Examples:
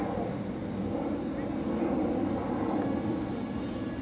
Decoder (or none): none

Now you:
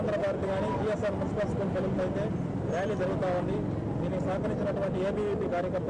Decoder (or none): none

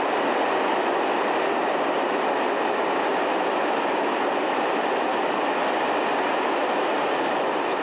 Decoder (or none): none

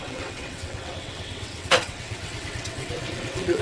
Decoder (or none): vocoder, WaveNeXt